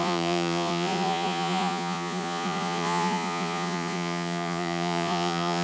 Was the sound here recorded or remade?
remade